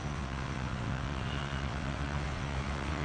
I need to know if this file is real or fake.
fake